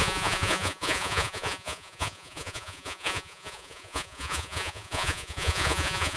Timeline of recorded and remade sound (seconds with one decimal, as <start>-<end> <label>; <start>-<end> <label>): 0.0-6.2 remade